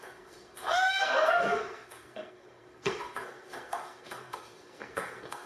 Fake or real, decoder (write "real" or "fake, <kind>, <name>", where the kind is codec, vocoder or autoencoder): fake, codec, SNAC